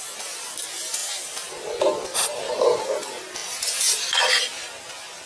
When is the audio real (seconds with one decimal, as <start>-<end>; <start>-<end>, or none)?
0.0-5.3